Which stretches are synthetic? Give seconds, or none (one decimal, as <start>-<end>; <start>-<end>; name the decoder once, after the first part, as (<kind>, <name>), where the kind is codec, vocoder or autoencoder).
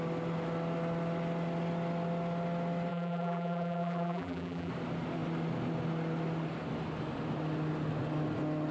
2.9-4.7 (vocoder, BigVGAN v2)